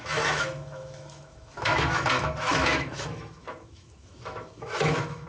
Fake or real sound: fake